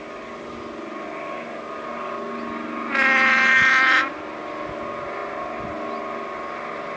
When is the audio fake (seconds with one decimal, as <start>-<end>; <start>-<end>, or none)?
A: none